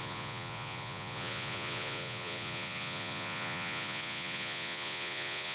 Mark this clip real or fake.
fake